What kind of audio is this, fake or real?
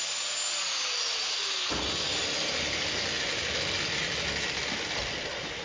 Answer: real